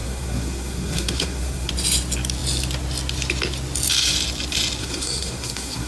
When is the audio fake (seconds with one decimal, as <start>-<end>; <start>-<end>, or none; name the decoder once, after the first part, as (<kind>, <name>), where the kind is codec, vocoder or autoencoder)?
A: 0.0-1.7 (codec, SNAC); 4.8-5.9